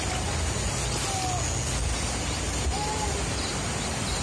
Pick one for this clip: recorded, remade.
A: recorded